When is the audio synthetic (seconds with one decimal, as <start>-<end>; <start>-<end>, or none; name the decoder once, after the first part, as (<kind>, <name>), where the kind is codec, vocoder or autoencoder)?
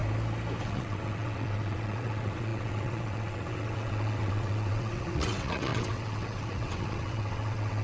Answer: 0.6-7.8 (vocoder, WaveNeXt)